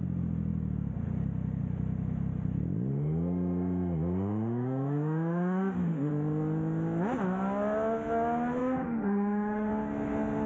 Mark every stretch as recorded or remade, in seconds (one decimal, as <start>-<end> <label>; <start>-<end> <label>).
0.0-2.9 recorded; 2.9-6.1 remade; 6.1-8.6 recorded; 8.6-9.7 remade; 9.7-10.5 recorded